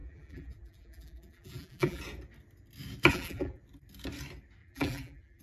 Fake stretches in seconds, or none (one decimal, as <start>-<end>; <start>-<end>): 0.0-2.0; 3.1-3.6; 4.6-5.4